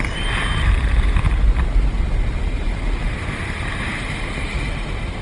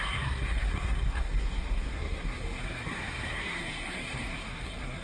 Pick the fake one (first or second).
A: second